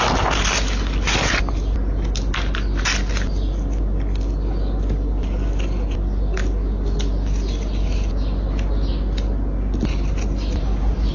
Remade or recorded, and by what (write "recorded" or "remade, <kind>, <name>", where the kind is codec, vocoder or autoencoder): recorded